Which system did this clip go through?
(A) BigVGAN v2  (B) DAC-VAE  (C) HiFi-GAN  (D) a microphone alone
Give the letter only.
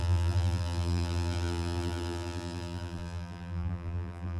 A